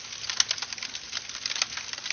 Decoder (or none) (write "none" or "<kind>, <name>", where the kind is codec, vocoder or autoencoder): none